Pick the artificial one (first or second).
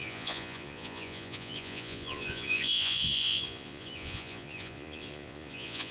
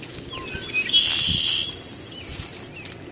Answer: first